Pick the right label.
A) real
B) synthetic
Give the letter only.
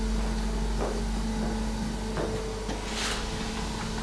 A